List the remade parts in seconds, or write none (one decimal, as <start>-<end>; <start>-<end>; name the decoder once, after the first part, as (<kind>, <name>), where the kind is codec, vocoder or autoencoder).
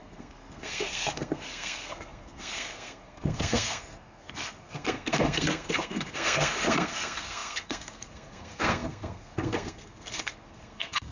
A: 0.0-11.1 (codec, SNAC)